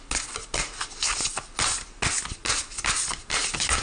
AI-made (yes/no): no